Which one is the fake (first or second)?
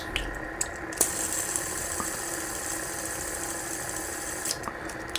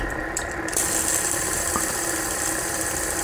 second